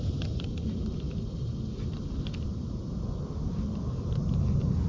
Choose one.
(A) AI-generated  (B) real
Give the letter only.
B